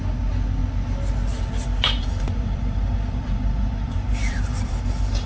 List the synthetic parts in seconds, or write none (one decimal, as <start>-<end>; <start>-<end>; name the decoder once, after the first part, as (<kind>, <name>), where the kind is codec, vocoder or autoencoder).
2.0-5.3 (vocoder, BigVGAN v2)